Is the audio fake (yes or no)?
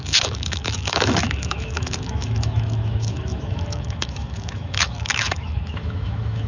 yes